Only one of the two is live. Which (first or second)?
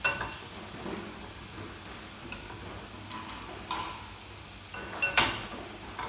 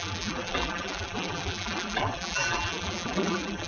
first